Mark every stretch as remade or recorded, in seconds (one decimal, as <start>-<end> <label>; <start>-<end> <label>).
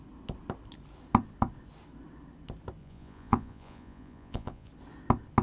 0.0-2.8 recorded; 2.8-4.7 remade; 4.7-5.4 recorded